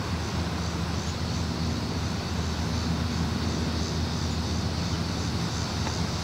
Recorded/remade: recorded